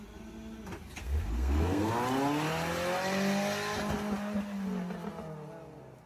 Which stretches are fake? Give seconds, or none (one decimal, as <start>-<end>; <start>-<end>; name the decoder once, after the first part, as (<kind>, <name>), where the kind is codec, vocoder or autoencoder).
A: 1.0-1.9 (codec, SNAC)

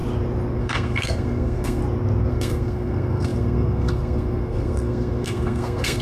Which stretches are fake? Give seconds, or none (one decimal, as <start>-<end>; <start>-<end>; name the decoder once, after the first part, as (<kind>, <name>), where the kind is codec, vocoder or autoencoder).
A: 0.6-1.8 (codec, SNAC); 2.3-6.0

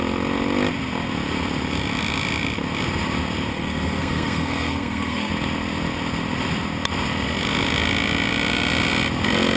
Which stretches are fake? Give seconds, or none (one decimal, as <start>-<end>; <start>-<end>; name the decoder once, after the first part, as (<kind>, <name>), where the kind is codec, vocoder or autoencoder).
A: 3.5-5.3 (codec, SNAC)

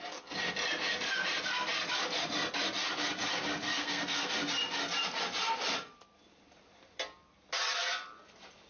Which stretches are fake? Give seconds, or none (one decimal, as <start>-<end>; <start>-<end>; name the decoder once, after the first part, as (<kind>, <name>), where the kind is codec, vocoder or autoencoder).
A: 3.7-4.3 (codec, SNAC)

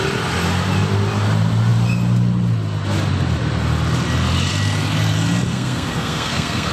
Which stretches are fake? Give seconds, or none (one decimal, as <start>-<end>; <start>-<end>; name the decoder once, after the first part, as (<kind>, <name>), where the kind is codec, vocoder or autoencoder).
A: 5.5-6.7 (codec, SNAC)